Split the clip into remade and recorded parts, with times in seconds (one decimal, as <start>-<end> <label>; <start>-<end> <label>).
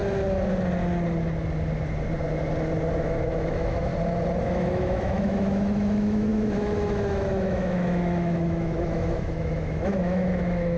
0.0-3.0 recorded; 3.0-3.9 remade; 3.9-4.4 recorded; 4.4-10.8 remade